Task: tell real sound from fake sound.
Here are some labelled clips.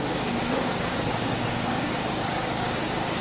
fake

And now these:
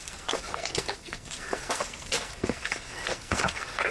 fake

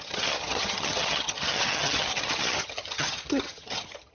fake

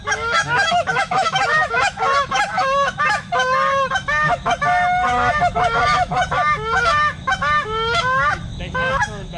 fake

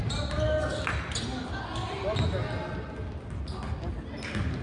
real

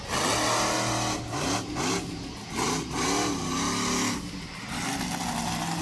real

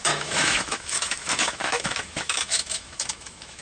fake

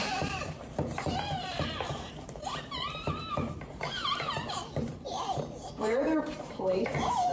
fake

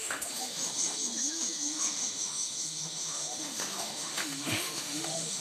fake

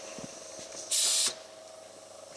real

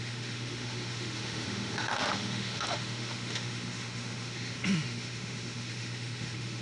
fake